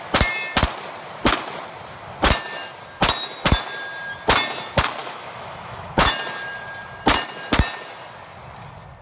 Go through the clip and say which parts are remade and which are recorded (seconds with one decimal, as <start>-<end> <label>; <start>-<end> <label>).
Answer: 0.0-5.0 recorded; 5.0-6.1 remade; 6.1-9.0 recorded